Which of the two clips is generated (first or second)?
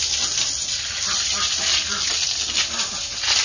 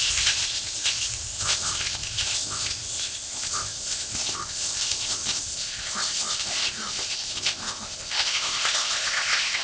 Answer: second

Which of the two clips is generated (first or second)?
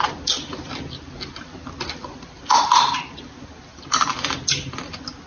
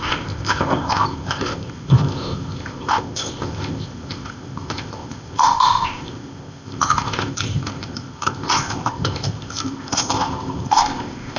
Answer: second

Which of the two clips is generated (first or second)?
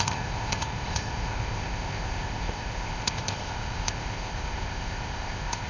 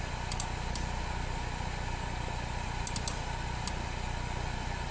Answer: first